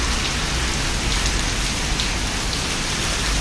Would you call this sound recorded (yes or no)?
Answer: yes